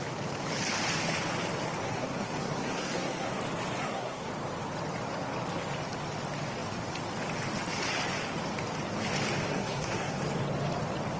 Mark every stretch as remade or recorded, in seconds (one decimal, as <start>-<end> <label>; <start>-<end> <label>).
0.0-1.8 recorded; 1.8-3.4 remade; 3.4-3.8 recorded; 3.8-4.3 remade; 4.3-9.5 recorded; 9.5-10.2 remade; 10.2-11.2 recorded

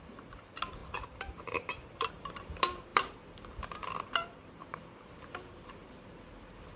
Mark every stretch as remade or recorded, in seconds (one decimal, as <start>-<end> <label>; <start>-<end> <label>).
0.0-6.8 remade

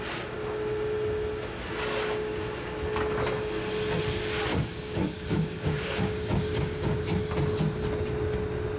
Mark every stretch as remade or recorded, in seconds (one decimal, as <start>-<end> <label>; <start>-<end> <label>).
0.0-4.5 recorded; 4.5-7.0 remade; 7.0-8.8 recorded